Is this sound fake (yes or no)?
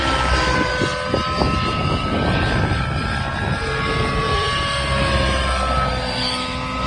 no